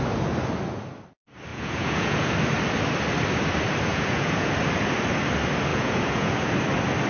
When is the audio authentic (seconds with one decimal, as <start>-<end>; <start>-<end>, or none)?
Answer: 0.0-1.5; 2.3-3.9; 4.5-5.7; 6.4-7.1